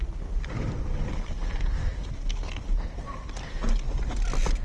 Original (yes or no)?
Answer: yes